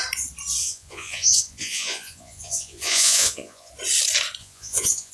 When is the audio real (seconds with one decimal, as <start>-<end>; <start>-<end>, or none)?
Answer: 0.0-0.6; 3.7-4.4